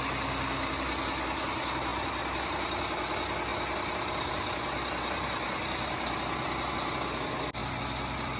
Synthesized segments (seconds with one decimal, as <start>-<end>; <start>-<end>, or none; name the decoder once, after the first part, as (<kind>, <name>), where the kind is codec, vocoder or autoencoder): none